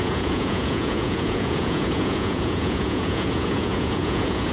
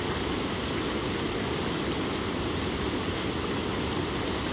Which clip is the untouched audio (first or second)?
second